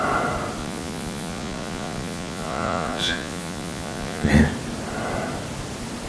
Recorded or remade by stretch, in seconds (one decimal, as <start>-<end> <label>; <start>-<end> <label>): 0.0-0.6 recorded; 0.6-4.3 remade; 4.3-6.1 recorded